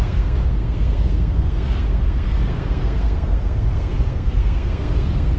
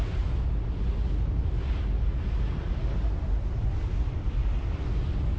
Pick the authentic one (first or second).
second